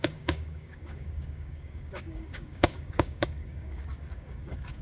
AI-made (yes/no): yes